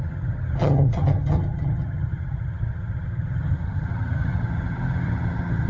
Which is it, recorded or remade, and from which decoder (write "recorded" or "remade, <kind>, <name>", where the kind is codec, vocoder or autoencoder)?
remade, vocoder, HiFi-GAN